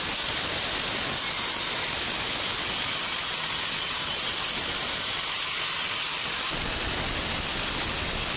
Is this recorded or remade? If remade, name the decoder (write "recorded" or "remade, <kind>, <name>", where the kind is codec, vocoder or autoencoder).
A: recorded